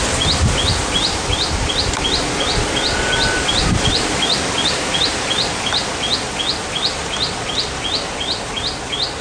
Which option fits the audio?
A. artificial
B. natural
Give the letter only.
B